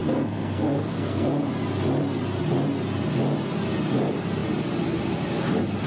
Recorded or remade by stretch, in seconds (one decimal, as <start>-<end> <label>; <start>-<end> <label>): 0.0-1.5 remade; 1.5-5.9 recorded